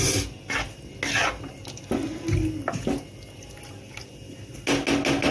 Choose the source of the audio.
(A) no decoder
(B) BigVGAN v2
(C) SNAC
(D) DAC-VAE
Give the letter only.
A